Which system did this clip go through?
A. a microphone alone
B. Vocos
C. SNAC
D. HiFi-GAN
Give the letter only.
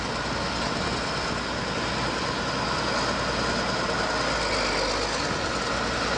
A